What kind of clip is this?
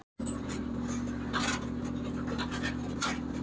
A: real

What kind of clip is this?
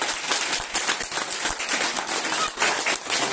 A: real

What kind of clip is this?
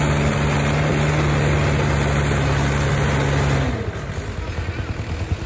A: real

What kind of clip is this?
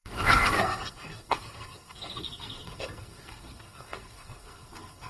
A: fake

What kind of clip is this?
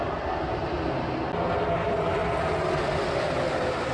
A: real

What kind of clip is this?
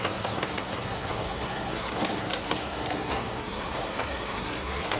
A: fake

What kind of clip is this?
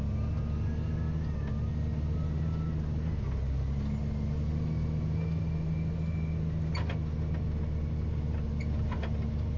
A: real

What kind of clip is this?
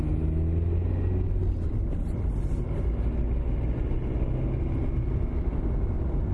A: real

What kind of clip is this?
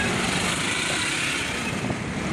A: real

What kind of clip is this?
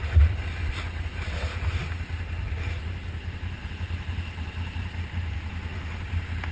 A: real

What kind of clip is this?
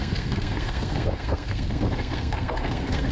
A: fake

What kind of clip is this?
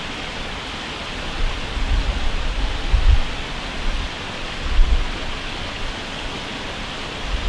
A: real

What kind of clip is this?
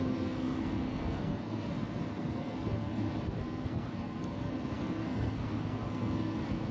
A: fake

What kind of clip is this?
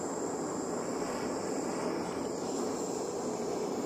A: real